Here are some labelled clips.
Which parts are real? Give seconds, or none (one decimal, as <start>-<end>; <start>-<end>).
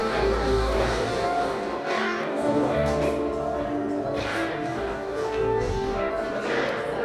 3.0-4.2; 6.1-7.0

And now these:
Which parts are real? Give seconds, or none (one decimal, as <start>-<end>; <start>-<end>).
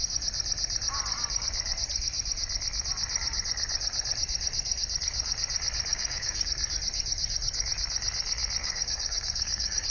0.0-5.9; 6.5-8.6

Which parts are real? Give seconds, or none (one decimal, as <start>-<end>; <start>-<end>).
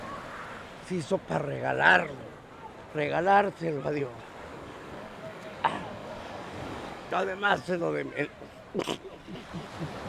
0.0-4.5; 7.8-10.1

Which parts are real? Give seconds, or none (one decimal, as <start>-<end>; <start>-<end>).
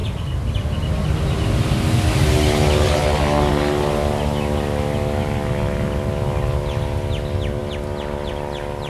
0.0-8.9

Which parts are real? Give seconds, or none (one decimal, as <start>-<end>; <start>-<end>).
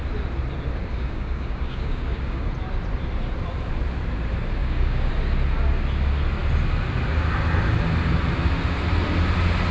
0.0-0.9; 2.5-4.6; 5.1-9.7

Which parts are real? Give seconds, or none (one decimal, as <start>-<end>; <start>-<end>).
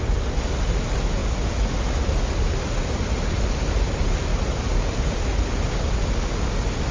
0.0-6.9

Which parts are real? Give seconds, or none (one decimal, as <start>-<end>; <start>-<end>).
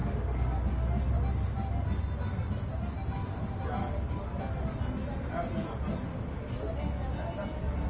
0.9-3.8; 4.4-6.1; 6.7-7.9